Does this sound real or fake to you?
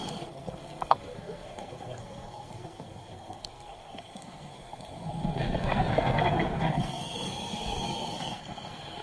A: fake